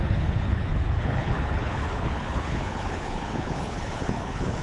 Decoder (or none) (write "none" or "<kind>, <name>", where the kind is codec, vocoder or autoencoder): codec, HILCodec